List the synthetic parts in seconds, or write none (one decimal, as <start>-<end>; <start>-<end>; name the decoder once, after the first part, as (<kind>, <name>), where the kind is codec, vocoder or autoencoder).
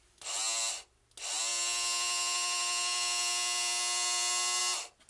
none